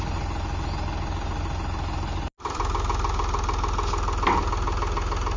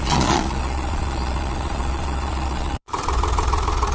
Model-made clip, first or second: second